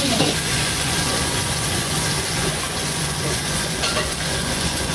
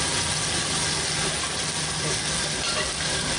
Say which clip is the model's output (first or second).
first